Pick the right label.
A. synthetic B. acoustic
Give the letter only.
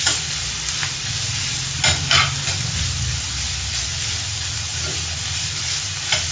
B